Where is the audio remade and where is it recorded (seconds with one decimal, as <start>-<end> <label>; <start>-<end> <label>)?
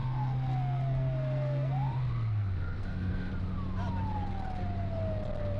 0.0-3.3 remade; 3.3-5.6 recorded